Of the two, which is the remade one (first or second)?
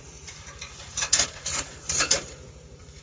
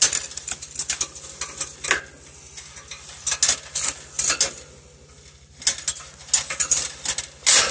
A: first